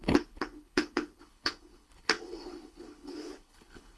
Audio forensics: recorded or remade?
remade